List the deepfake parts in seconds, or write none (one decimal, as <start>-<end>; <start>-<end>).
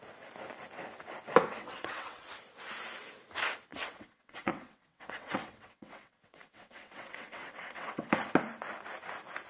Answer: 1.5-2.3; 3.7-8.1